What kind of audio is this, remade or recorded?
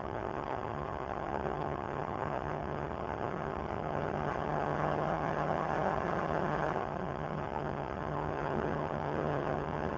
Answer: remade